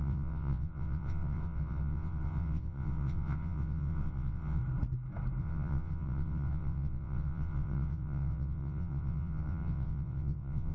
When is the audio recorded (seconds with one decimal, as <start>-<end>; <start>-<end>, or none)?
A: 4.6-5.4